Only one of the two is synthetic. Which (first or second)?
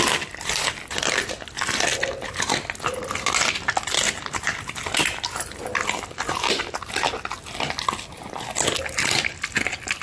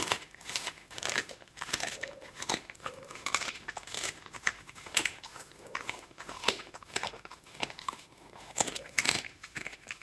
second